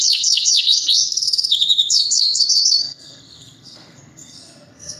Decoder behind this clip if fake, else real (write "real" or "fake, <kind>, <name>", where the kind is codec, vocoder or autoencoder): fake, codec, SNAC